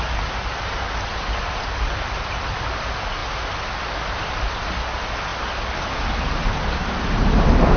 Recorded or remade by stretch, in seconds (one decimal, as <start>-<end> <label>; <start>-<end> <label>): 0.0-0.4 recorded; 0.4-2.5 remade; 2.5-7.8 recorded